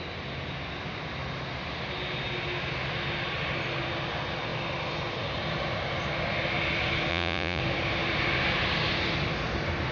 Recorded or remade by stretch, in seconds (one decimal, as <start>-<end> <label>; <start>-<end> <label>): 0.0-7.1 recorded; 7.1-7.6 remade; 7.6-9.9 recorded